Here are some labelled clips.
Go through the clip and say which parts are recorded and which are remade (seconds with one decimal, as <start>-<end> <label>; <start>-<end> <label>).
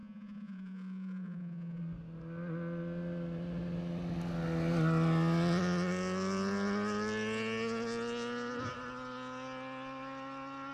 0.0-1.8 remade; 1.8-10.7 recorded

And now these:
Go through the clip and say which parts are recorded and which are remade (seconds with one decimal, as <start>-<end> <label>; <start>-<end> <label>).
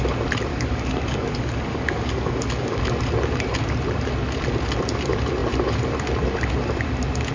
0.0-0.5 recorded; 0.5-2.8 remade; 2.8-7.3 recorded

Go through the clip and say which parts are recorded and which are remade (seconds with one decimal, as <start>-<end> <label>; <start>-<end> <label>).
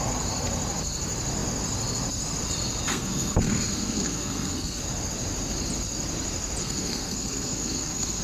0.0-2.9 recorded; 2.9-4.8 remade; 4.8-6.6 recorded; 6.6-8.2 remade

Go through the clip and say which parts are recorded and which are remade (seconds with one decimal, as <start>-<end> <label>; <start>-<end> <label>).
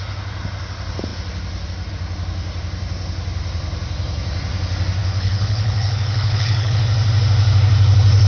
0.0-5.0 recorded; 5.0-6.8 remade; 6.8-8.3 recorded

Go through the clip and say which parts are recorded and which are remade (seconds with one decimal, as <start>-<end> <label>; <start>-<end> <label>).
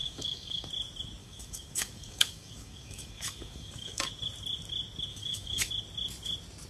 0.0-0.7 remade; 0.7-1.2 recorded; 1.2-4.1 remade; 4.1-5.1 recorded; 5.1-5.7 remade; 5.7-6.7 recorded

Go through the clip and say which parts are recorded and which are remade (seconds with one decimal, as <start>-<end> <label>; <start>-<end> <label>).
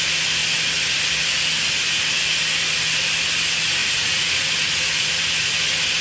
0.0-3.8 recorded; 3.8-5.2 remade; 5.2-6.0 recorded